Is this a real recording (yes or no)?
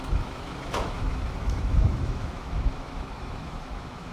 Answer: no